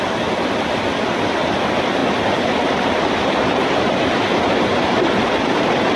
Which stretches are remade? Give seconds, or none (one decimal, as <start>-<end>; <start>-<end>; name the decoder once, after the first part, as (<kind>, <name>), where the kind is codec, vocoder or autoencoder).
2.0-5.0 (vocoder, BigVGAN v2)